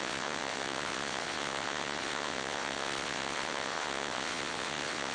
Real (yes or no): no